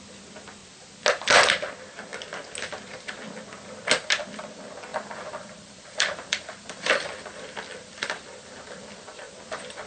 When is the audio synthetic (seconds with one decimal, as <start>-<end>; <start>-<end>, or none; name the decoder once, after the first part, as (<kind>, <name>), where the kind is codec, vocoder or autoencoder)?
4.9-9.9 (vocoder, BigVGAN v2)